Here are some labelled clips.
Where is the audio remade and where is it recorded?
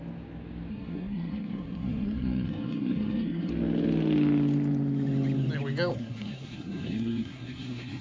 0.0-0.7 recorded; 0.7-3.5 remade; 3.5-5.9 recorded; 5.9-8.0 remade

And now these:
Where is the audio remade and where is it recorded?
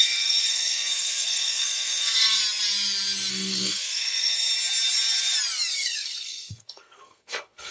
0.0-2.4 remade; 2.4-3.3 recorded; 3.3-4.5 remade; 4.5-5.7 recorded; 5.7-7.7 remade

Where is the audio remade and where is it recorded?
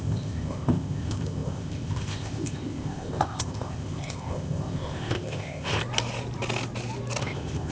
0.0-5.8 remade; 5.8-7.2 recorded; 7.2-7.7 remade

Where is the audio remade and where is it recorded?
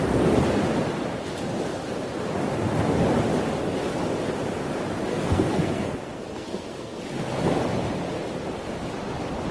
0.0-5.1 recorded; 5.1-7.0 remade; 7.0-9.5 recorded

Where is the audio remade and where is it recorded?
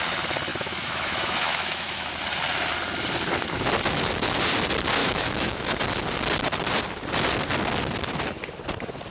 0.0-0.5 recorded; 0.5-2.1 remade; 2.1-5.0 recorded; 5.0-5.8 remade; 5.8-9.1 recorded